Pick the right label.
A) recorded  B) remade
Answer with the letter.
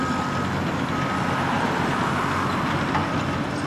A